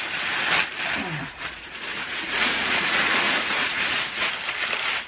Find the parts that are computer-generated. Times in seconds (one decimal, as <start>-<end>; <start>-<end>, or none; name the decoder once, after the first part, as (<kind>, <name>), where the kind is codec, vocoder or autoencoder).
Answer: 1.2-4.3 (vocoder, Vocos)